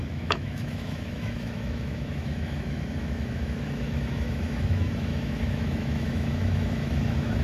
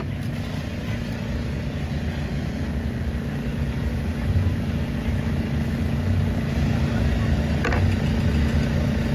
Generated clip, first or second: first